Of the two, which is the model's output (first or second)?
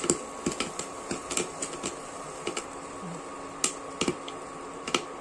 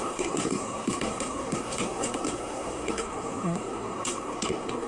second